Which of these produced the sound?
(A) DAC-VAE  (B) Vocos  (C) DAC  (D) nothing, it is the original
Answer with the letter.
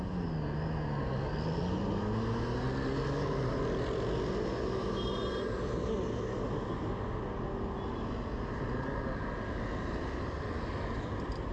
D